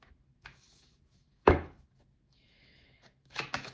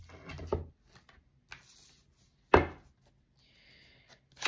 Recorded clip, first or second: second